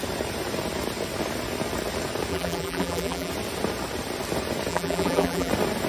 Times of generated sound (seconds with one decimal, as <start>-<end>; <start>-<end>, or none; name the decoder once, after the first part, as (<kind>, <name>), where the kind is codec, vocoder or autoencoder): 2.3-3.3 (vocoder, BigVGAN v2); 4.7-5.5